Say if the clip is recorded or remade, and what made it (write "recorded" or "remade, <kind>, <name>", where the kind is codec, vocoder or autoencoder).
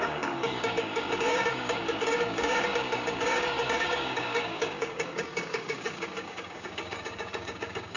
remade, codec, DAC